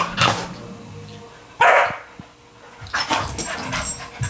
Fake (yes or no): no